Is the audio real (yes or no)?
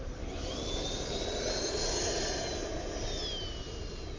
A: yes